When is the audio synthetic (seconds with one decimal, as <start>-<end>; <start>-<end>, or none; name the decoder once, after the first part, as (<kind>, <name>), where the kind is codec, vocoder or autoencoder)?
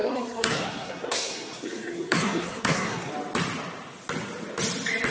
0.0-3.1 (codec, SNAC)